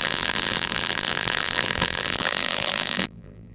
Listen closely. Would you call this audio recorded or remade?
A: remade